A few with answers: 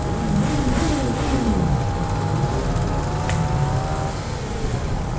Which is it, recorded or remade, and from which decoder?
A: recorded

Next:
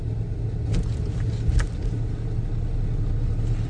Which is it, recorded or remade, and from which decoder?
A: recorded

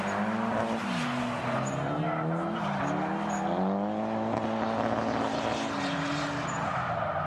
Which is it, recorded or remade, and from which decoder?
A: recorded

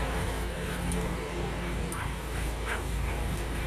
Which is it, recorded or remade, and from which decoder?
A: remade, codec, DAC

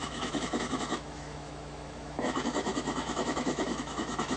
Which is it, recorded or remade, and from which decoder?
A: remade, autoencoder, DAC-VAE